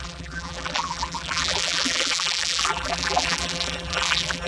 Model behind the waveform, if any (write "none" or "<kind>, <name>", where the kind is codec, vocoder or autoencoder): vocoder, BigVGAN v2